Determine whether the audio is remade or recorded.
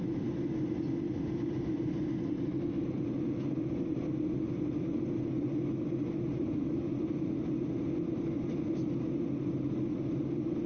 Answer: recorded